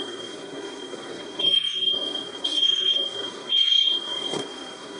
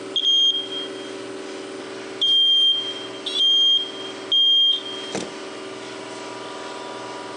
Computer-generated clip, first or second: first